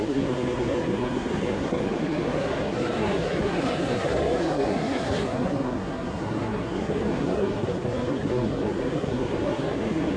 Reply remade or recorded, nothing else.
remade